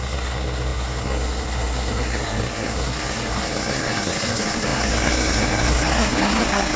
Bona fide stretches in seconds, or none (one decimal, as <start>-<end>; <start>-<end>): none